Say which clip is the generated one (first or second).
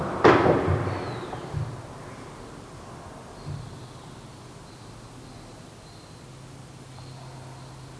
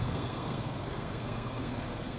second